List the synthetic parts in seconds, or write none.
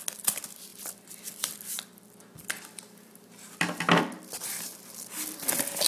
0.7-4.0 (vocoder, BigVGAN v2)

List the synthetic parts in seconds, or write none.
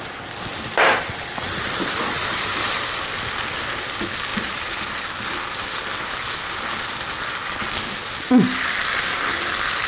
4.3-8.7 (vocoder, BigVGAN v2)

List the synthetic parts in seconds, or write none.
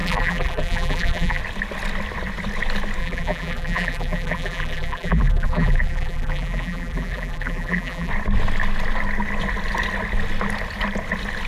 0.0-1.4 (vocoder, BigVGAN v2); 3.0-8.1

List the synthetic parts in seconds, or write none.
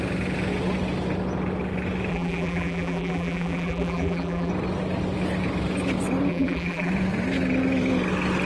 2.1-4.5 (vocoder, BigVGAN v2); 6.3-6.9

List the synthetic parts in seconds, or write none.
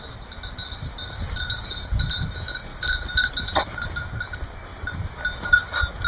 0.9-1.7 (vocoder, BigVGAN v2); 2.7-3.3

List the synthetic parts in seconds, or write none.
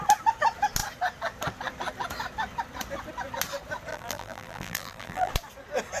3.9-5.3 (vocoder, BigVGAN v2)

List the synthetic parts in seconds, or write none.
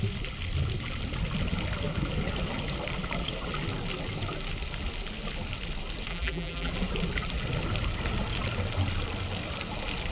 6.1-6.7 (vocoder, BigVGAN v2)